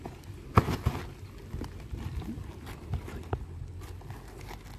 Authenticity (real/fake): real